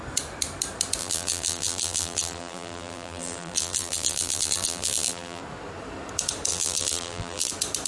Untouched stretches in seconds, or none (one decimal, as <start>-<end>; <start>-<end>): 0.0-1.0; 5.4-6.5; 7.5-7.9